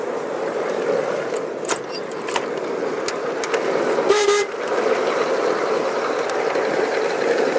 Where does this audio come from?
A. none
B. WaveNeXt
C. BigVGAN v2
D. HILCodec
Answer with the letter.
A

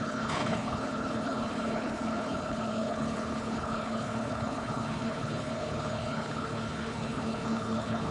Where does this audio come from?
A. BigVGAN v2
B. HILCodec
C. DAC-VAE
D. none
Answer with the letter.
B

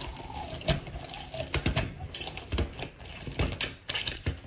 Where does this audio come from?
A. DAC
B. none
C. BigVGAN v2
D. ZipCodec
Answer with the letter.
B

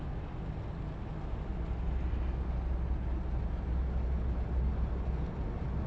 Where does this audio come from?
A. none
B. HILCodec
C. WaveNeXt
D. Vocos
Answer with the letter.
A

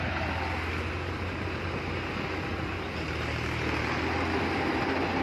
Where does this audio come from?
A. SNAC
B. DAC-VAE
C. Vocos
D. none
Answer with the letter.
D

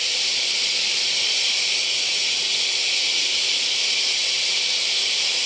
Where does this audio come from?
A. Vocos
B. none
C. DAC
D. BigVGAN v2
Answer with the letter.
B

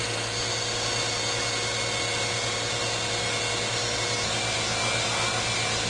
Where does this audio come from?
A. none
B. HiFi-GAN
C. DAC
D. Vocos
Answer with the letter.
A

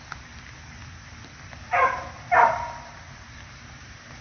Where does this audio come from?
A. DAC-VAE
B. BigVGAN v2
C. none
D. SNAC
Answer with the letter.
C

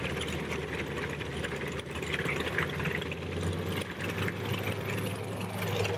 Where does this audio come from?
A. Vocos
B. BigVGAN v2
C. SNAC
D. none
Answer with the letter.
D